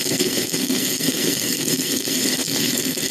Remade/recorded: remade